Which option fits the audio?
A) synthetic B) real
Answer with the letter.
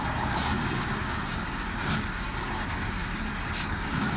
A